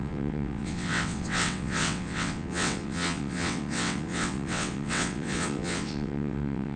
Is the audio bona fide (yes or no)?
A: no